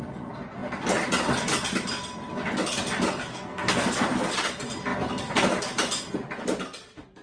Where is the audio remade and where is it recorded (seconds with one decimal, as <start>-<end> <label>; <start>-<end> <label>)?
0.0-3.3 recorded; 3.3-4.1 remade; 4.1-7.2 recorded